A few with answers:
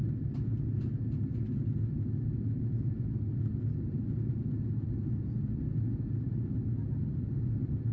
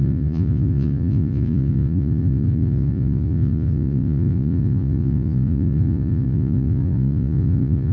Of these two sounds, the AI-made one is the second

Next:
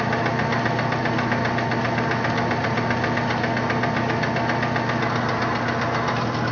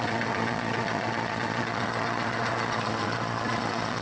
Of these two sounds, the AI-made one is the second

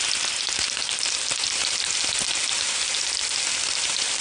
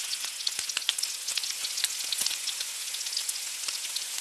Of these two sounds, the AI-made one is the second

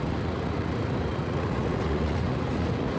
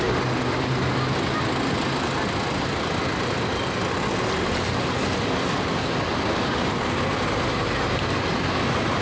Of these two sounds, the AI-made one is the first